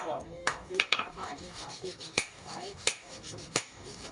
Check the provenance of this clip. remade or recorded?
remade